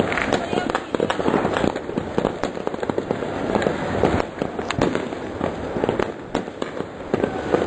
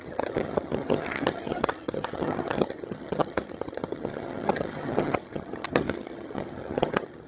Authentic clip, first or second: first